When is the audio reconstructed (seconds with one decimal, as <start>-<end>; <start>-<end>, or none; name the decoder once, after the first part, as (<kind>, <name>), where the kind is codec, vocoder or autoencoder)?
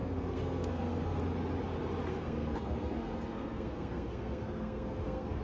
0.0-1.2 (codec, SNAC); 2.1-5.4